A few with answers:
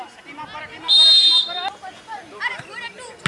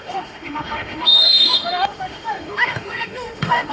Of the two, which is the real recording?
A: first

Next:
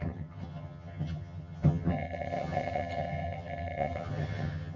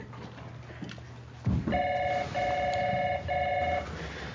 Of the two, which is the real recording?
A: second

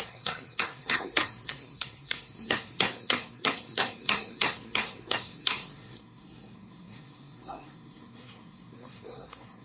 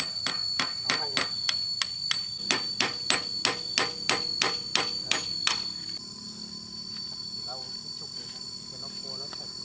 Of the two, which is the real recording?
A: second